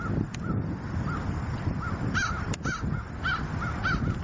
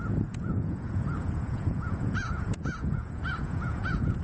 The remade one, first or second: second